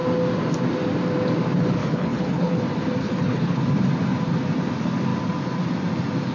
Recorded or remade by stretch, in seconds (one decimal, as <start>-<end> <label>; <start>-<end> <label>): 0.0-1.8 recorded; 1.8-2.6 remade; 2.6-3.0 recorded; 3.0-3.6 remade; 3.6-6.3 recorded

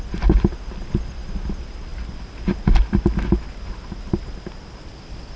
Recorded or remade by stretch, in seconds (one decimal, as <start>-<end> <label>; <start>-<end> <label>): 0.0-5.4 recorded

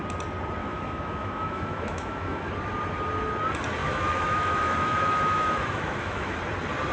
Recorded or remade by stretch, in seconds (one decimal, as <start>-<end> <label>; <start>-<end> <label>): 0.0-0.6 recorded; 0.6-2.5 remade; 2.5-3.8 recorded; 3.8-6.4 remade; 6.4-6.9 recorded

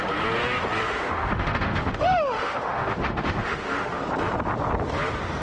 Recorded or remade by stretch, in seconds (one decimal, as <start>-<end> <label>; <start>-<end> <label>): 0.0-0.8 recorded; 0.8-4.0 remade; 4.0-5.4 recorded

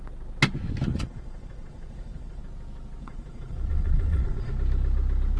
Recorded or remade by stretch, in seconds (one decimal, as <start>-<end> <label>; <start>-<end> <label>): 0.0-0.9 recorded; 0.9-2.4 remade; 2.4-3.0 recorded; 3.0-4.5 remade; 4.5-5.4 recorded

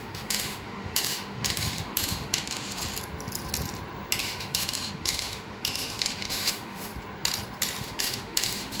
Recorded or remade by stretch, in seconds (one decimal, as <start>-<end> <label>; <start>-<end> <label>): 0.0-2.8 remade; 2.8-4.2 recorded; 4.2-6.9 remade; 6.9-7.8 recorded; 7.8-8.8 remade